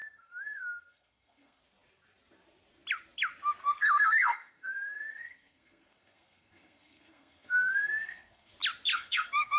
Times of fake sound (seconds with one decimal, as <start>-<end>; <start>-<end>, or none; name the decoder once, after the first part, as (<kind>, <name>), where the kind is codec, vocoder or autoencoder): 0.0-1.6 (codec, SNAC); 3.6-8.5; 8.9-9.6